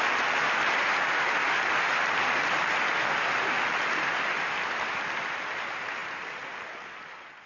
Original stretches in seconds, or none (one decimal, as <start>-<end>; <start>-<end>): 0.0-1.9; 2.8-7.5